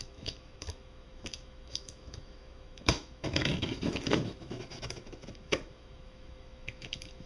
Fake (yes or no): yes